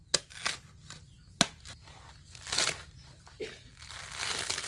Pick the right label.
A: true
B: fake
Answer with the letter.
A